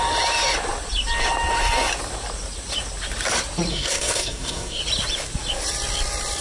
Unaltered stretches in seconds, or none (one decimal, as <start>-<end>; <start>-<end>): 0.0-3.7; 4.8-6.4

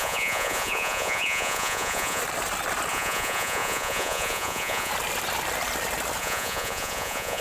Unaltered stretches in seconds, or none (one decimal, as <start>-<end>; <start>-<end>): 2.2-2.9; 4.9-6.2

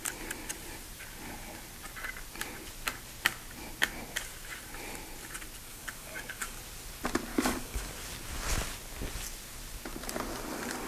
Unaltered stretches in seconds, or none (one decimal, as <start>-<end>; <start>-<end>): 0.0-5.7; 6.6-7.3; 7.9-10.9

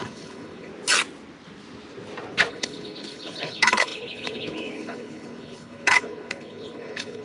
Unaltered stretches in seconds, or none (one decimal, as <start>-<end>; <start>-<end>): 0.7-2.5